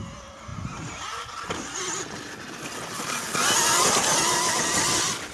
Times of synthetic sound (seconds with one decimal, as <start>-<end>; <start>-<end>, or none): none